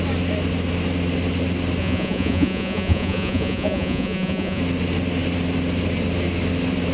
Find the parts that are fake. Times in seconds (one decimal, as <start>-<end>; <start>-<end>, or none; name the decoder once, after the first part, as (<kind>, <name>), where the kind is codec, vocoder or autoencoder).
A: 1.8-4.6 (vocoder, Vocos)